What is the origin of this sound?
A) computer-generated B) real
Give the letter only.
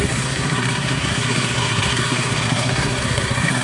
A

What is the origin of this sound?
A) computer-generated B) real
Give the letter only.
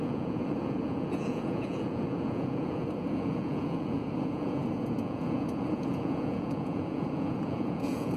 A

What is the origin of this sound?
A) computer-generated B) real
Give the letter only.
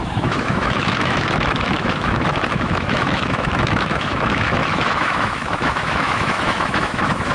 A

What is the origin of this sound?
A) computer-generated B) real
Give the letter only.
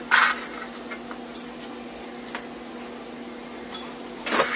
B